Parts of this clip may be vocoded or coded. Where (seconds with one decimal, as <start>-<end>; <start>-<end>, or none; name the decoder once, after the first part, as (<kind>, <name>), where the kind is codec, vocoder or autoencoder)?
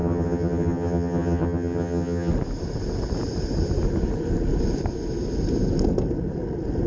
0.0-2.3 (vocoder, HiFi-GAN)